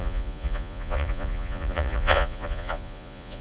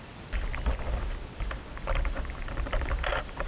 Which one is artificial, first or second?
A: first